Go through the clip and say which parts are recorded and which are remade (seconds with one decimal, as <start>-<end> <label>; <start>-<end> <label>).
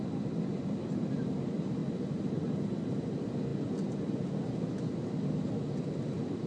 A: 0.0-1.8 recorded; 1.8-3.0 remade; 3.0-6.5 recorded